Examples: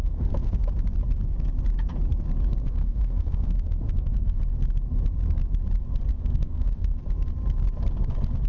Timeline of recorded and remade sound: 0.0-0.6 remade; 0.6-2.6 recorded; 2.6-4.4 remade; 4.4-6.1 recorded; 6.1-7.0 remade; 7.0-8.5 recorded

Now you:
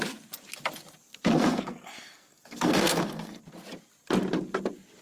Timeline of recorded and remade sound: 0.0-1.1 recorded; 1.1-3.4 remade; 3.4-5.0 recorded

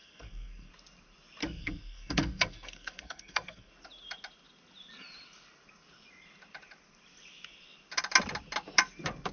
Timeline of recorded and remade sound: 0.0-0.7 remade; 0.7-1.4 recorded; 1.4-3.7 remade; 3.7-9.3 recorded

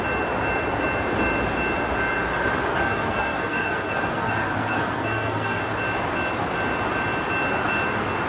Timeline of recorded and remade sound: 0.0-2.7 recorded; 2.7-5.6 remade; 5.6-8.3 recorded

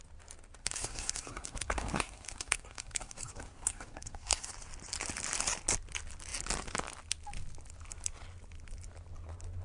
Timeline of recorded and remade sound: 0.0-0.6 recorded; 0.6-4.5 remade; 4.5-9.6 recorded

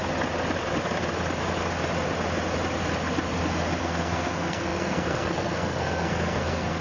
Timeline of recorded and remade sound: 0.0-3.8 recorded; 3.8-6.8 remade